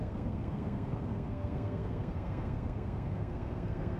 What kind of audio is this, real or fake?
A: fake